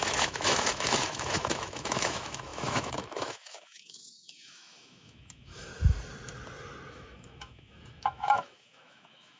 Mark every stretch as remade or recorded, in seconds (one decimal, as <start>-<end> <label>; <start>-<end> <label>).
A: 0.0-5.7 remade; 5.7-6.9 recorded; 6.9-9.4 remade